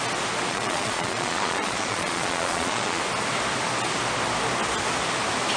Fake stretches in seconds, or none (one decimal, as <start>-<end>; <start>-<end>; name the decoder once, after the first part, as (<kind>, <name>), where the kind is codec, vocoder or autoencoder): 0.5-3.0 (vocoder, Vocos)